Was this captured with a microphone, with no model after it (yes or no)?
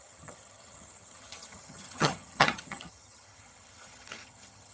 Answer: no